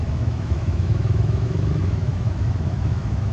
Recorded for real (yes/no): no